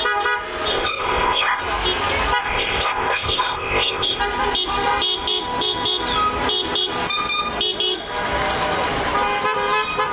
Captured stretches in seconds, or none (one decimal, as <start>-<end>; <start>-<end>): 0.0-0.7; 1.6-2.4; 4.2-10.1